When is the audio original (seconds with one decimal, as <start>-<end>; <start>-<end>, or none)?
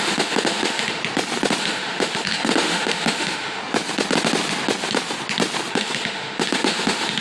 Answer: 1.0-1.6; 3.6-5.7